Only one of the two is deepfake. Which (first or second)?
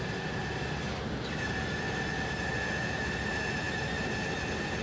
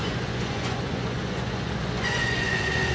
second